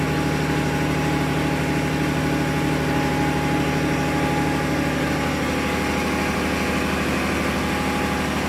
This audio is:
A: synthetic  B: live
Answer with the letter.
B